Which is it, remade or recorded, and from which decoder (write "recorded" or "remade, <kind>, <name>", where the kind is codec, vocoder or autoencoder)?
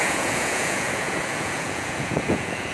remade, vocoder, Vocos